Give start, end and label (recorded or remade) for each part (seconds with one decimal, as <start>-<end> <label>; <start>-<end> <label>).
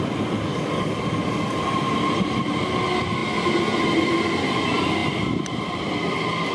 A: 0.0-0.5 recorded; 0.5-1.6 remade; 1.6-6.5 recorded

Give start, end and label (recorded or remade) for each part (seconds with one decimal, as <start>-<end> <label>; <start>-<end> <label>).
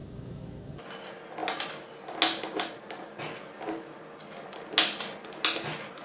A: 0.0-0.8 remade; 0.8-6.0 recorded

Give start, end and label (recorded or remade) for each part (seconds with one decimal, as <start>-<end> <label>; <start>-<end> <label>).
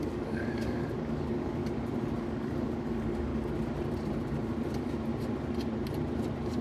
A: 0.0-1.6 remade; 1.6-2.2 recorded; 2.2-3.3 remade; 3.3-6.6 recorded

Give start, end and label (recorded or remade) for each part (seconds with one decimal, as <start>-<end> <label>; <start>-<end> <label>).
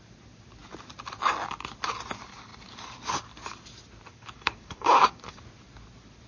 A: 0.0-4.1 recorded; 4.1-5.4 remade; 5.4-6.3 recorded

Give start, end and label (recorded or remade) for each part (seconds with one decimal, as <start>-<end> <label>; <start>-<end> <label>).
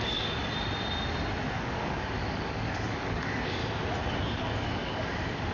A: 0.0-0.4 remade; 0.4-1.5 recorded; 1.5-3.6 remade; 3.6-4.1 recorded; 4.1-5.5 remade